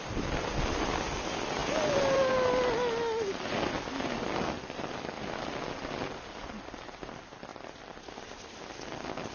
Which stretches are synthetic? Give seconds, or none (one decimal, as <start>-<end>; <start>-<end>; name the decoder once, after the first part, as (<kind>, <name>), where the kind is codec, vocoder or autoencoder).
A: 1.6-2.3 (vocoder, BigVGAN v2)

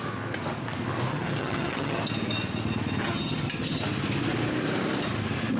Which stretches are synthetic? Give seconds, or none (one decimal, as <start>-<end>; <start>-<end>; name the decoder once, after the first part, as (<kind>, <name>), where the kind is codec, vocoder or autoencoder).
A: 1.1-2.0 (vocoder, HiFi-GAN); 3.0-3.8

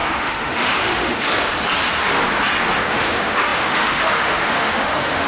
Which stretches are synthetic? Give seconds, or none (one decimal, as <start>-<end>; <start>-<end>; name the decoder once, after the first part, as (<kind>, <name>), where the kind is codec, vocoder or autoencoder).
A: 0.0-1.3 (autoencoder, DAC-VAE); 2.9-5.3